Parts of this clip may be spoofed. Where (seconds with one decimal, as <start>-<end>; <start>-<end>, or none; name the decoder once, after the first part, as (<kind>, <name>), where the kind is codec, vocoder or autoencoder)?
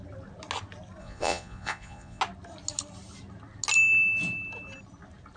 1.0-2.2 (vocoder, Vocos)